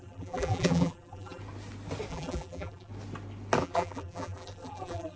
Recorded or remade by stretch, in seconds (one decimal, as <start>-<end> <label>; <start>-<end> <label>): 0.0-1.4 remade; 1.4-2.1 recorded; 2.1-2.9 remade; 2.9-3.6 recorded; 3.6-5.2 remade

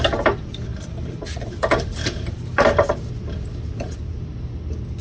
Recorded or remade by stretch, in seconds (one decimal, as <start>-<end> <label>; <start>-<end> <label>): 0.0-0.7 recorded; 0.7-3.1 remade; 3.1-5.0 recorded

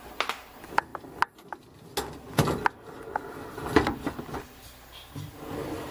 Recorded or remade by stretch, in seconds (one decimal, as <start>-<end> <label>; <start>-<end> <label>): 0.0-5.9 recorded

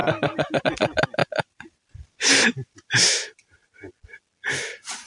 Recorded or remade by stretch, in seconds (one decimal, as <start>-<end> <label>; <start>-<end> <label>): 0.0-0.6 remade; 0.6-1.2 recorded; 1.2-3.9 remade; 3.9-5.1 recorded

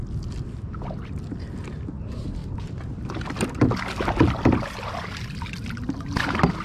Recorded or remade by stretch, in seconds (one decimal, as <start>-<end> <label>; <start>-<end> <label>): 0.0-2.4 recorded; 2.4-3.6 remade; 3.6-6.6 recorded

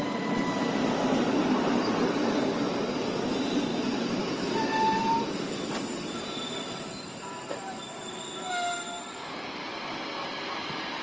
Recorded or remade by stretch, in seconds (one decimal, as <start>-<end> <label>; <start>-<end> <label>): 0.0-3.7 recorded; 3.7-8.5 remade; 8.5-11.0 recorded